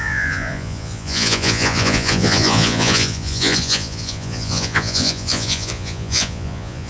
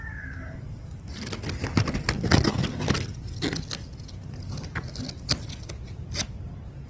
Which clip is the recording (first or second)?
second